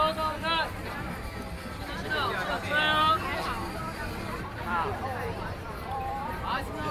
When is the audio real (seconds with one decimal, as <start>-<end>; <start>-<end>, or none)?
0.0-3.8; 6.4-6.9